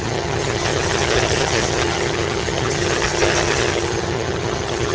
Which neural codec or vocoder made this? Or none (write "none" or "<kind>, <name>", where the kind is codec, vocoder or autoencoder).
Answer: vocoder, HiFi-GAN